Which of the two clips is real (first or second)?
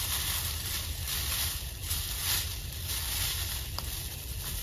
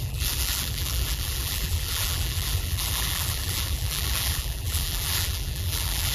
first